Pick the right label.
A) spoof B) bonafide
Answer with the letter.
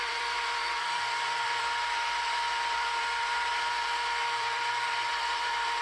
A